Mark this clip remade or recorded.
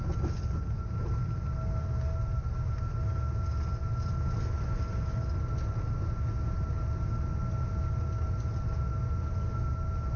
recorded